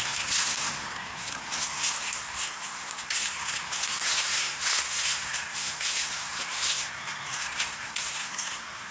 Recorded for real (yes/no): no